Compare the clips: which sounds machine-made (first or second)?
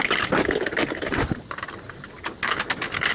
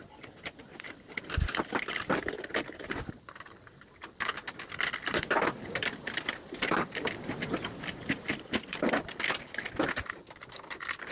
second